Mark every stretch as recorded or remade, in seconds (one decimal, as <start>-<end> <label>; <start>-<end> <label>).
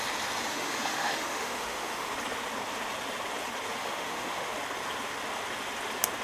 0.0-0.5 recorded; 0.5-2.1 remade; 2.1-3.8 recorded; 3.8-4.5 remade; 4.5-6.2 recorded